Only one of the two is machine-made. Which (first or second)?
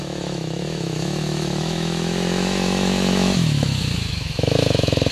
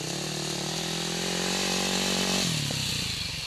first